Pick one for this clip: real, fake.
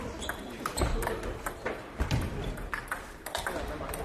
fake